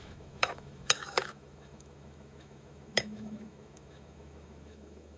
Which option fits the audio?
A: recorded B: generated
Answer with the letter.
B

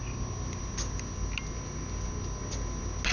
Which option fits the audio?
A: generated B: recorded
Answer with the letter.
B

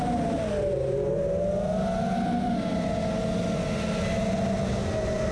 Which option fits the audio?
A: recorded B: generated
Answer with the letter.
A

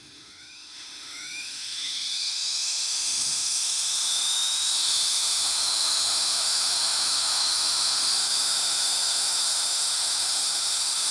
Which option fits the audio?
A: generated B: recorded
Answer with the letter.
A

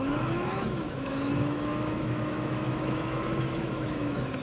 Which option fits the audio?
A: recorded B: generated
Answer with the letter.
B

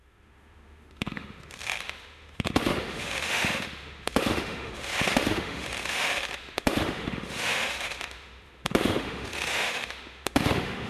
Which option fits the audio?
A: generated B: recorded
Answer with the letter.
A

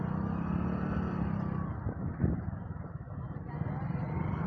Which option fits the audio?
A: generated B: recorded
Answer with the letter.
B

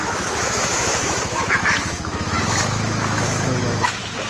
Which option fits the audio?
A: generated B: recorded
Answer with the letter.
A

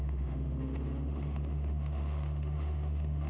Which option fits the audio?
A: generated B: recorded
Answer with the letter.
A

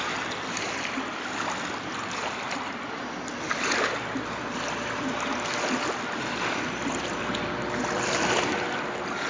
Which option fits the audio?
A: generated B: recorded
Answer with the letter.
B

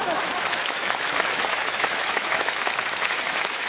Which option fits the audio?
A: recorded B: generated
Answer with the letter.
B